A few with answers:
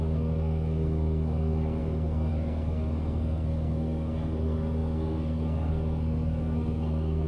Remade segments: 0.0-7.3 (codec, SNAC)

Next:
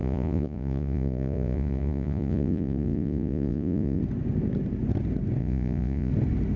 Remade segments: 0.0-4.0 (vocoder, Vocos); 5.4-6.1